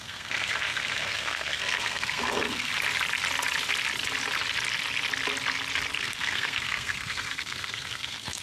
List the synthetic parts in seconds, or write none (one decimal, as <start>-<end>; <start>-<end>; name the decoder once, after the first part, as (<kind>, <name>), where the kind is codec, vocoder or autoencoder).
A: 0.0-2.7 (codec, SNAC); 6.0-8.4